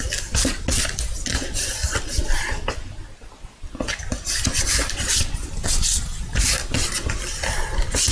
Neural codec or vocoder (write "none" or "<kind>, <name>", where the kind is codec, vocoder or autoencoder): none